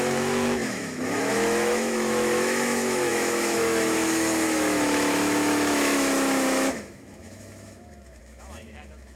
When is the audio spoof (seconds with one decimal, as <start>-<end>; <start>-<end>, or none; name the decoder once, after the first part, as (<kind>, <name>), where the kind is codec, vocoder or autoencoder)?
0.0-9.2 (autoencoder, DAC-VAE)